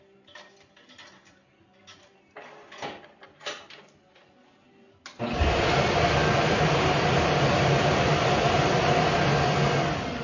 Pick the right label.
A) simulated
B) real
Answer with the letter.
B